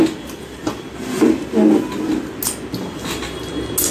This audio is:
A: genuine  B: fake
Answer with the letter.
A